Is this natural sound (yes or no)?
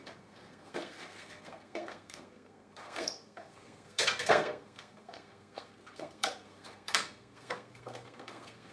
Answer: no